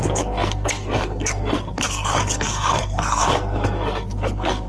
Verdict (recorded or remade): remade